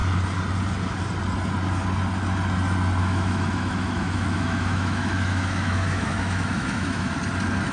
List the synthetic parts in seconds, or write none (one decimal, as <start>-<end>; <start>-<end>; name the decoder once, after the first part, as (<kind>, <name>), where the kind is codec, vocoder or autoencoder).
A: 3.0-7.1 (autoencoder, DAC-VAE)